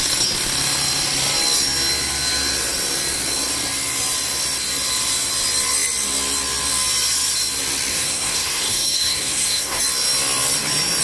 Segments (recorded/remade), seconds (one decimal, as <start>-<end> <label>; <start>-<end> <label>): 0.0-7.9 recorded; 7.9-9.8 remade; 9.8-11.0 recorded